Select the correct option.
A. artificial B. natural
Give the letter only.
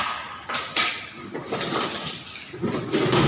B